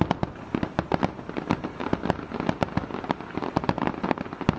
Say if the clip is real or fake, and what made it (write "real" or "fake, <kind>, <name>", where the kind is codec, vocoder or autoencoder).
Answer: real